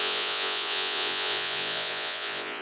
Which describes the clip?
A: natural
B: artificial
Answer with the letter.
B